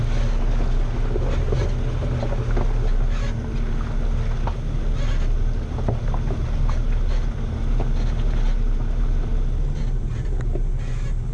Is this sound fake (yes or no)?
no